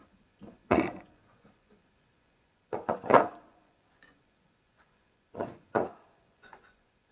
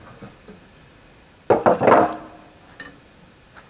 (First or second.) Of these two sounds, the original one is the second